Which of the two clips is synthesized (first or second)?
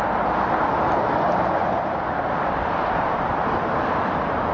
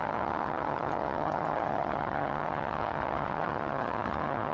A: second